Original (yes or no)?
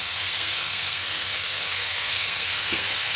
no